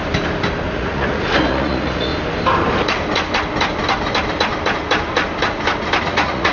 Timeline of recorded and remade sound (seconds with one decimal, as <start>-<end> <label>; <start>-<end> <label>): 0.0-0.7 recorded; 0.7-2.1 remade; 2.1-6.0 recorded; 6.0-6.5 remade